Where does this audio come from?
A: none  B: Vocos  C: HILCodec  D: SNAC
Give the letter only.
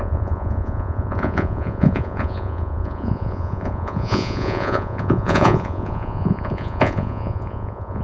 B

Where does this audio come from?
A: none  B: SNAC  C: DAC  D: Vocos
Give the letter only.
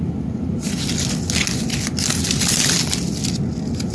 A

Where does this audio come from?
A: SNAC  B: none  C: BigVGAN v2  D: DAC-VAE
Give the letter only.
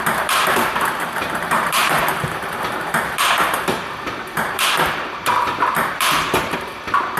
C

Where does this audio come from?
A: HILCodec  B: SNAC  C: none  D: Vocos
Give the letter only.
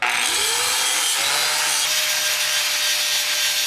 C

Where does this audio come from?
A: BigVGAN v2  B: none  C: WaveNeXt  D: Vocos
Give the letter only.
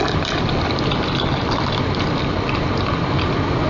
B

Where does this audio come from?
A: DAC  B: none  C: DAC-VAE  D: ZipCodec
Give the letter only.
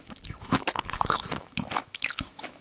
C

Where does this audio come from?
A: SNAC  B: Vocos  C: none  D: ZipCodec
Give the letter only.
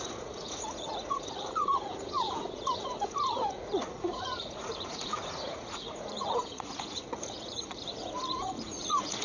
B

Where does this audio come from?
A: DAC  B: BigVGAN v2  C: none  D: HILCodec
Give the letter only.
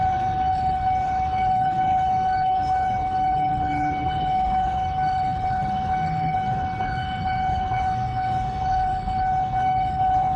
D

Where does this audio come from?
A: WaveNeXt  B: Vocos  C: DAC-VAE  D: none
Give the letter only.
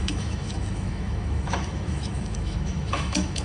C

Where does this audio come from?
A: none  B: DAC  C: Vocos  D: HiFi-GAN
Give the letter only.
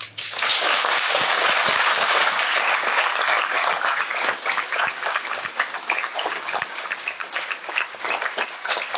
B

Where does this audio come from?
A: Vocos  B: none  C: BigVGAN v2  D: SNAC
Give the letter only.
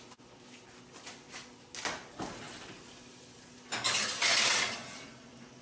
B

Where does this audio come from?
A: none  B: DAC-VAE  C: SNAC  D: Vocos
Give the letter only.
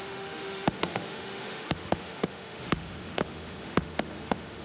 B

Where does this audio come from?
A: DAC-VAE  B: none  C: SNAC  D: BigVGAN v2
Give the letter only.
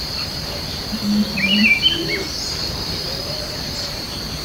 D